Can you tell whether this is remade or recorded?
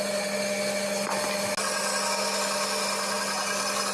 recorded